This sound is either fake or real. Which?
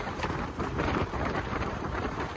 fake